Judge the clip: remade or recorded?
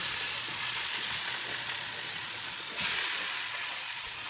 remade